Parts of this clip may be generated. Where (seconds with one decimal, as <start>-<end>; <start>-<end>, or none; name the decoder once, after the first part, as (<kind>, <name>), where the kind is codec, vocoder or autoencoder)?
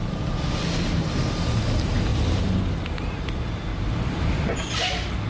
2.1-3.2 (vocoder, BigVGAN v2); 3.7-4.7